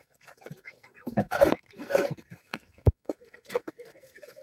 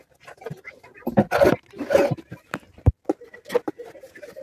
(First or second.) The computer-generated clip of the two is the first